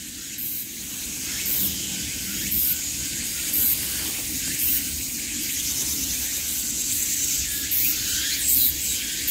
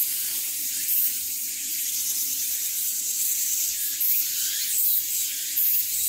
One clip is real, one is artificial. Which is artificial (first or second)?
second